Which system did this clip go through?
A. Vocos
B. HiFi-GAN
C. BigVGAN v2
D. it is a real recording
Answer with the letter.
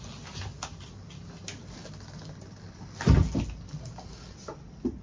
D